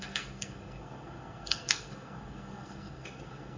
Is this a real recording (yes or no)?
no